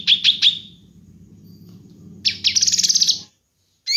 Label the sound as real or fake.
real